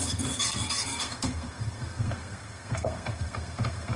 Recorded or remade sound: remade